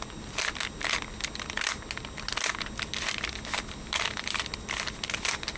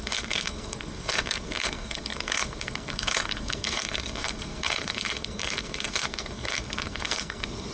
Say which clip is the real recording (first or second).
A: first